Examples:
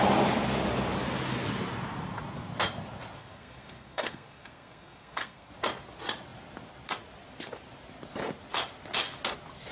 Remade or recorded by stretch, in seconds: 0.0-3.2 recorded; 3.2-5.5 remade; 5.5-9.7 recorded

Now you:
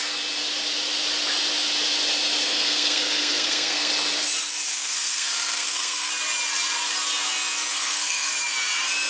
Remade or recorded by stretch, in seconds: 0.0-2.5 recorded; 2.5-3.9 remade; 3.9-4.7 recorded; 4.7-6.1 remade; 6.1-7.7 recorded; 7.7-8.3 remade; 8.3-9.1 recorded

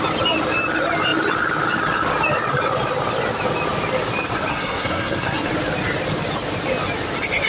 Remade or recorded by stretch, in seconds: 0.0-4.5 recorded; 4.5-5.5 remade; 5.5-7.5 recorded

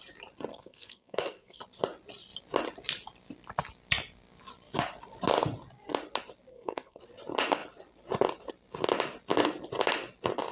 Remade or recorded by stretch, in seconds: 0.0-0.5 recorded; 0.5-1.6 remade; 1.6-6.5 recorded; 6.5-7.0 remade; 7.0-10.5 recorded

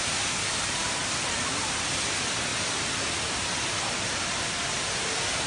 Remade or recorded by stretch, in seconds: 0.0-5.5 recorded

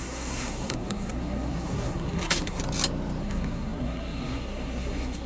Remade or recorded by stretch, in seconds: 0.0-2.6 remade; 2.6-3.2 recorded; 3.2-5.3 remade

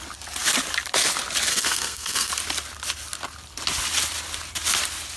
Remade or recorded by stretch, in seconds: 0.0-1.5 recorded; 1.5-2.3 remade; 2.3-5.2 recorded

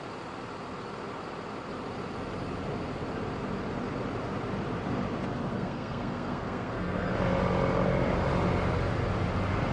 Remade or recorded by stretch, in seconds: 0.0-5.5 recorded; 5.5-7.1 remade; 7.1-9.7 recorded